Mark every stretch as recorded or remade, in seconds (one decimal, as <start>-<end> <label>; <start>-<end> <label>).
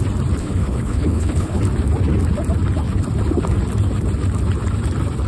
0.0-0.4 recorded; 0.4-1.6 remade; 1.6-5.3 recorded